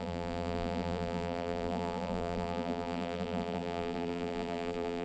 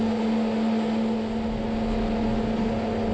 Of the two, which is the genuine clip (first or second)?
second